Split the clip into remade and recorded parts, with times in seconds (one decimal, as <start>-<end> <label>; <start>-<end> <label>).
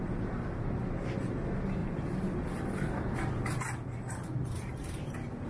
0.0-1.8 recorded; 1.8-5.1 remade; 5.1-5.5 recorded